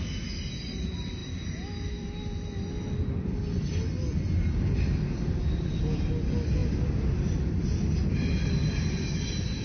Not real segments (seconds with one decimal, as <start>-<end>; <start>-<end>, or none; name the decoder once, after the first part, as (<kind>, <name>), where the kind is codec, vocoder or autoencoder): none